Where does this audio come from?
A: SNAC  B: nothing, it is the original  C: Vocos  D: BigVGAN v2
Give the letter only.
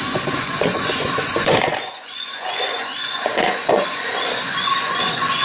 C